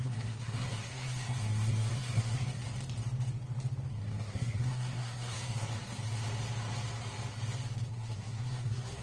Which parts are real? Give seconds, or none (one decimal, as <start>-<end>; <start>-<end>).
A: 2.6-3.9; 5.7-7.9